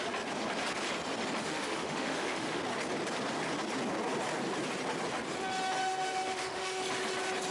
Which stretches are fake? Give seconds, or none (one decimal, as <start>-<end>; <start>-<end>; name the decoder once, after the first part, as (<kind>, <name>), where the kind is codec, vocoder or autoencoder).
1.4-2.6 (autoencoder, DAC-VAE); 5.8-6.8